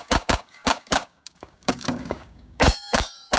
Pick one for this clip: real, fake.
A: fake